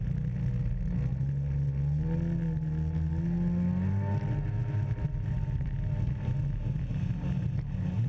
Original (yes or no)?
yes